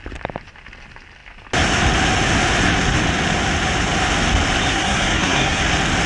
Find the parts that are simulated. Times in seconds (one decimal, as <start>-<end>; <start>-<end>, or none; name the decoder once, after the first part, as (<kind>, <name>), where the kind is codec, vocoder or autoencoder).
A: 4.7-5.6 (codec, SNAC)